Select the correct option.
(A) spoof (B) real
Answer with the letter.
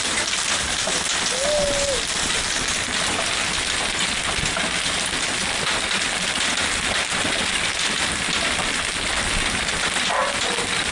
B